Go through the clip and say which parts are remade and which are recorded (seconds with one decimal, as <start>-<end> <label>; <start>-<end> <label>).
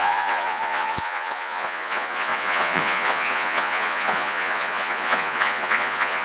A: 0.0-6.2 remade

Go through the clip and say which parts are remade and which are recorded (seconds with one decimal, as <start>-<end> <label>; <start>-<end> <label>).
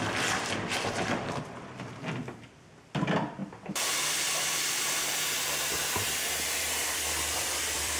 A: 0.0-8.0 remade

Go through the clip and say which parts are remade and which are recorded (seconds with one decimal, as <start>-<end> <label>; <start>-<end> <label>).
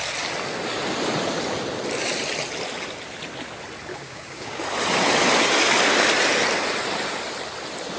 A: 0.0-3.9 recorded; 3.9-4.6 remade; 4.6-8.0 recorded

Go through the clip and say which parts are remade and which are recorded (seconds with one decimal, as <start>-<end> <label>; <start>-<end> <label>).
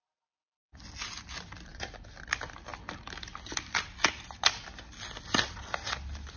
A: 0.0-6.4 recorded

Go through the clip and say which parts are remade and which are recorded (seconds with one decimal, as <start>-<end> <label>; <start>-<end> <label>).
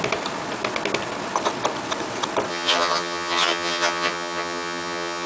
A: 0.0-2.5 recorded; 2.5-5.3 remade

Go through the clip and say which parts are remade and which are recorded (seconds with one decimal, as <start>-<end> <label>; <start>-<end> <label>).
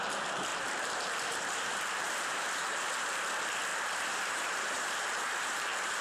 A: 0.0-0.5 recorded; 0.5-2.9 remade; 2.9-3.7 recorded; 3.7-6.0 remade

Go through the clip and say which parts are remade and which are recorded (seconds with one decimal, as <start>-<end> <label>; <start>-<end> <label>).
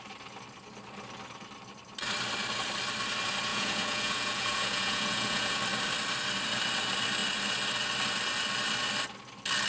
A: 0.0-3.5 recorded; 3.5-5.6 remade; 5.6-9.7 recorded